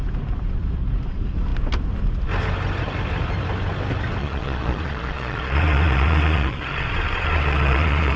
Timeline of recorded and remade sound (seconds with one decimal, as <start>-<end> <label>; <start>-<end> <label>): 0.0-4.2 recorded; 4.2-8.2 remade